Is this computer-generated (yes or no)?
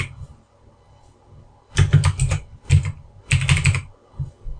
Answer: no